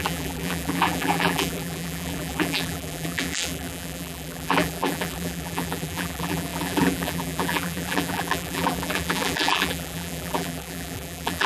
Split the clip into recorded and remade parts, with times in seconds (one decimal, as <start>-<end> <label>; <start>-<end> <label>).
0.0-11.5 remade